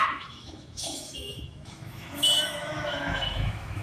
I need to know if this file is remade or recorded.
remade